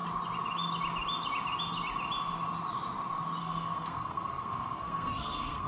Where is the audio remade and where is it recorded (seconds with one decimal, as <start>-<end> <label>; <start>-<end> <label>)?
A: 0.0-3.4 recorded; 3.4-5.7 remade